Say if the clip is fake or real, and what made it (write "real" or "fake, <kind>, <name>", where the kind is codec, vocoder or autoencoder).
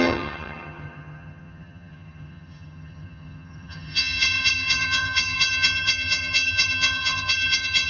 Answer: fake, vocoder, HiFi-GAN